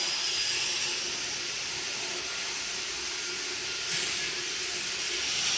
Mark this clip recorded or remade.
recorded